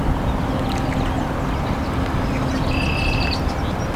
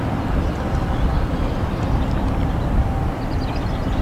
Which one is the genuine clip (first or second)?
first